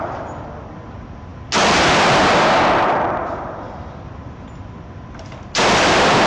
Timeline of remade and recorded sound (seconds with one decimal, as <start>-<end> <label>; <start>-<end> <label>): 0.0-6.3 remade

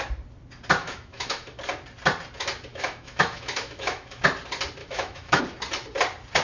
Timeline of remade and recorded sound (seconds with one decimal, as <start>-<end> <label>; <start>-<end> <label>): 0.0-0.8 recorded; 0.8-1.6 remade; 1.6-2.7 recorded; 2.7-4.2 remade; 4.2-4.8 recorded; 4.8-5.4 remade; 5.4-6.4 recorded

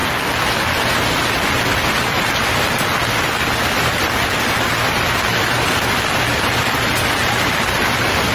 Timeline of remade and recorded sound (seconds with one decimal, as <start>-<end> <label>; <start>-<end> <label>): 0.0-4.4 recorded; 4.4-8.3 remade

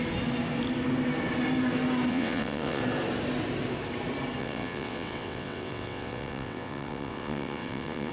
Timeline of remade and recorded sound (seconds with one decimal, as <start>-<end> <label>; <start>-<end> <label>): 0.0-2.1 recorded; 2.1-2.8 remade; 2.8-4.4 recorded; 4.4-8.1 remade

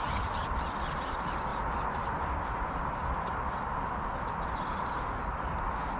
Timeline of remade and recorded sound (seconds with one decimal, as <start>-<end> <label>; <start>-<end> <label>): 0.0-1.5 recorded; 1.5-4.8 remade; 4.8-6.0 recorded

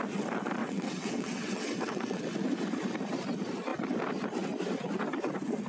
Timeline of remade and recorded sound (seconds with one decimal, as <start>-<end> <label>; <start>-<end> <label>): 0.0-0.6 recorded; 0.6-2.2 remade; 2.2-5.7 recorded

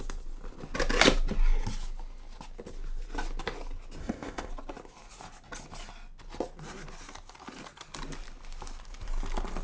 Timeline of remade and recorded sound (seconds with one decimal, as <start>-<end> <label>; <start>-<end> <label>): 0.0-4.0 recorded; 4.0-4.5 remade; 4.5-9.6 recorded

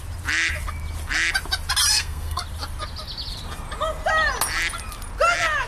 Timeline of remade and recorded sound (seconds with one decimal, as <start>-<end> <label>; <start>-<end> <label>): 0.0-1.9 recorded; 1.9-2.4 remade; 2.4-5.7 recorded